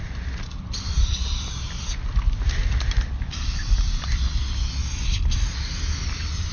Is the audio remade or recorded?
recorded